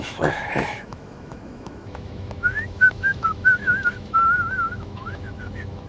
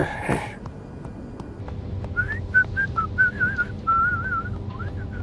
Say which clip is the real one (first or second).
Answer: second